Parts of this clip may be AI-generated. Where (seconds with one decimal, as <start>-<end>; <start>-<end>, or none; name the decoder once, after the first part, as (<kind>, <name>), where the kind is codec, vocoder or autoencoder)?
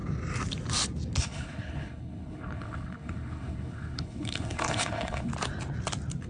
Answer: 1.2-5.3 (codec, HILCodec)